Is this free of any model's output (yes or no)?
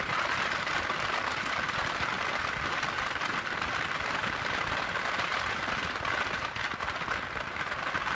yes